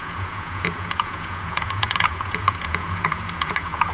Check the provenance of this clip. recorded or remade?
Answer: remade